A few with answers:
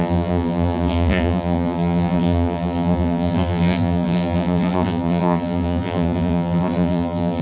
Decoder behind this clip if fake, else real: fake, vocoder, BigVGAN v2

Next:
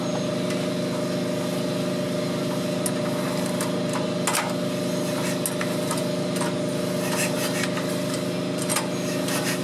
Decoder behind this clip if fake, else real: real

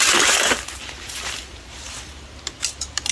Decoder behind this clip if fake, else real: real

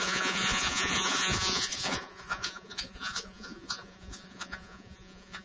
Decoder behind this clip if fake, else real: fake, vocoder, Vocos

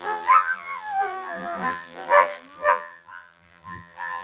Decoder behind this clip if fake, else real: fake, vocoder, BigVGAN v2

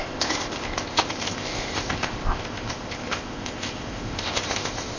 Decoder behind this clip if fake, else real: fake, codec, ZipCodec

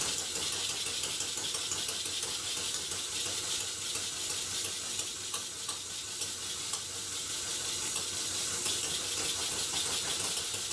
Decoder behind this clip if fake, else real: real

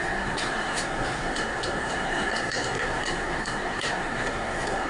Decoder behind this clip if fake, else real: fake, codec, SNAC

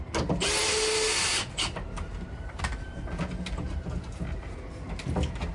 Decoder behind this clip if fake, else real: real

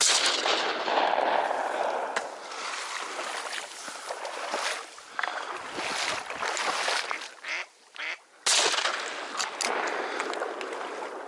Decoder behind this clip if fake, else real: real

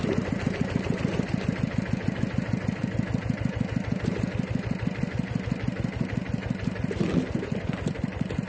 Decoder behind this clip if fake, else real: fake, vocoder, BigVGAN v2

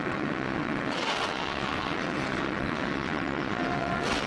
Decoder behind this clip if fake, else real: fake, vocoder, WaveNeXt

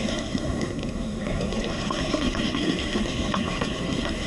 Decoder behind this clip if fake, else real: fake, codec, SNAC